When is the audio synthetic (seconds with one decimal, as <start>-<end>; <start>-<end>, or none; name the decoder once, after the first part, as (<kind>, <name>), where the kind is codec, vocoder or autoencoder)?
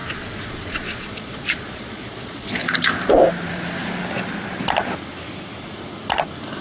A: 0.0-2.6 (vocoder, Vocos)